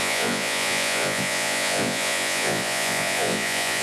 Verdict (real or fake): fake